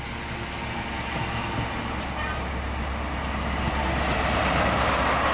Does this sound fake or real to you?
real